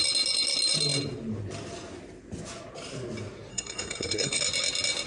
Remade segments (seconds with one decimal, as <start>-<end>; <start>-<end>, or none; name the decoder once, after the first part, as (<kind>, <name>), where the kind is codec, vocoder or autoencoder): 3.5-4.4 (codec, SNAC)